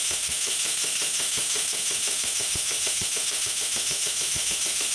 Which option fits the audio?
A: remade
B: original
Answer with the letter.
A